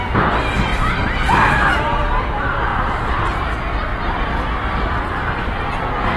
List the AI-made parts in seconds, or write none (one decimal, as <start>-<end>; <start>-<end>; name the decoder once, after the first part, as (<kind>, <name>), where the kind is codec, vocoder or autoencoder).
0.7-1.5 (vocoder, BigVGAN v2); 2.7-3.5; 3.9-5.8